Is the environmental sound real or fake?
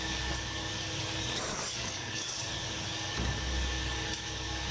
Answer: fake